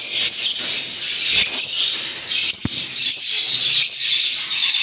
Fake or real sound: real